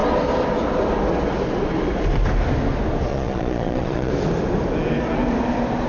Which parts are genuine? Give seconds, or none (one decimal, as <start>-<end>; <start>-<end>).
0.0-3.1; 4.1-5.9